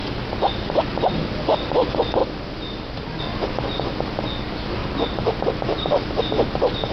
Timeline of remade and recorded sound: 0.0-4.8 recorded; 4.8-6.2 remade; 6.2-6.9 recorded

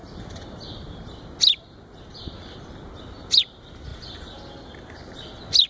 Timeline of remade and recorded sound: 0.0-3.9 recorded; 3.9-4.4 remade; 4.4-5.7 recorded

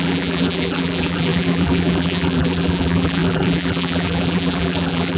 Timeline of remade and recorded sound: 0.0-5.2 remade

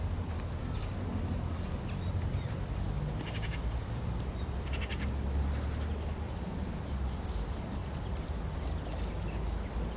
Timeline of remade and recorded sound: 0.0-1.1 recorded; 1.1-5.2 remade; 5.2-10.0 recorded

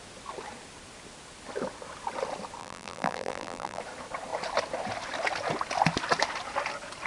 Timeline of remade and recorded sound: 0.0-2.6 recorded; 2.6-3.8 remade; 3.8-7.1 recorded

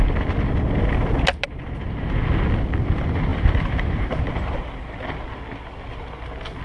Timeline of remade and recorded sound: 0.0-3.3 recorded; 3.3-5.4 remade; 5.4-6.6 recorded